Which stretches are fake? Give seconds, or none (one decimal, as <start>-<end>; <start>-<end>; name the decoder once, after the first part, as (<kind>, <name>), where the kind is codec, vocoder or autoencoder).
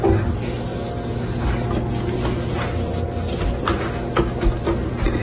none